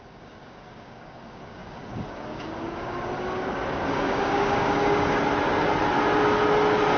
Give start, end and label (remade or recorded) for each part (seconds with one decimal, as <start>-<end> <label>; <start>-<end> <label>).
0.0-5.2 remade; 5.2-7.0 recorded

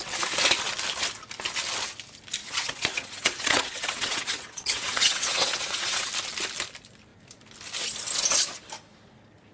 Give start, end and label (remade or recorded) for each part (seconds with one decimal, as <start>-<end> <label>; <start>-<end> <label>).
0.0-2.4 recorded; 2.4-6.1 remade; 6.1-9.5 recorded

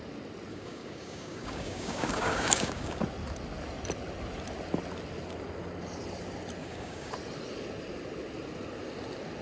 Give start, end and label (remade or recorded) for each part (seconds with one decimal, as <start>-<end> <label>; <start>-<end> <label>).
0.0-0.5 recorded; 0.5-3.0 remade; 3.0-6.6 recorded; 6.6-7.1 remade; 7.1-9.4 recorded